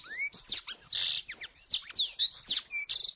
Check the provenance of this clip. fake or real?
real